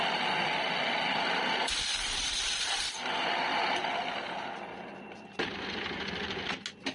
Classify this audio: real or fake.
real